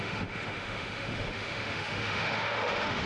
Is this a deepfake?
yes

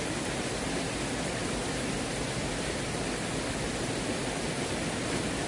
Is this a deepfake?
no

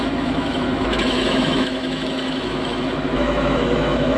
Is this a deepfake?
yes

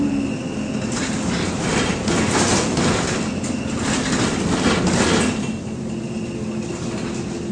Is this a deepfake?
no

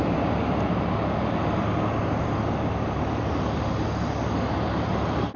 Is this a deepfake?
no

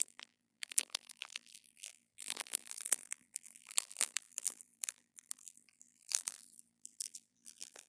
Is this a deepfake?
yes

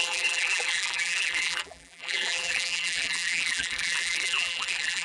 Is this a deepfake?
yes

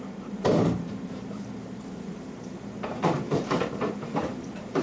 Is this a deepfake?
yes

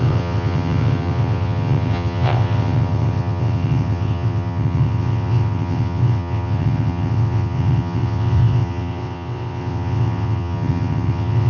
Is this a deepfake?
yes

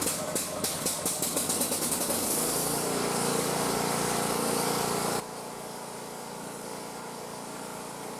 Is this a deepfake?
yes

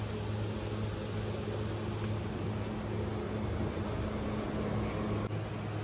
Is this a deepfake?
no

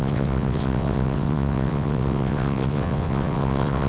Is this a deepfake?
yes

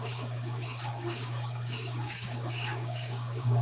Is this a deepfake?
yes